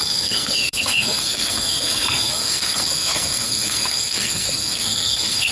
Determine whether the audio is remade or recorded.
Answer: remade